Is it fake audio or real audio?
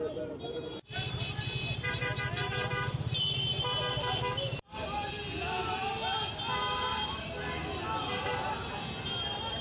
real